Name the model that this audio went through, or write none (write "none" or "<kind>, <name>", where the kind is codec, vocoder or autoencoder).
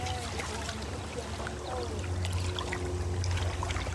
none